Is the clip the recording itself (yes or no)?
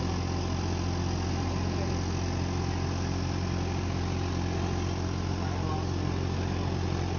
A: yes